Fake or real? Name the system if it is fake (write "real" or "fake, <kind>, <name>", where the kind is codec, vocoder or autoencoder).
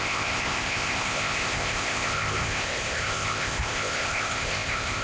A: fake, codec, ZipCodec